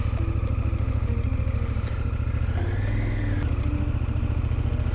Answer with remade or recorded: recorded